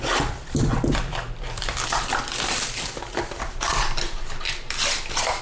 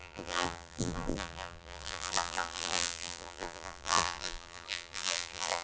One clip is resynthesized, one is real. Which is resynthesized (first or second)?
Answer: second